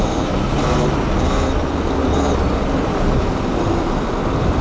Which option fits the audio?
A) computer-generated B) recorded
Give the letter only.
B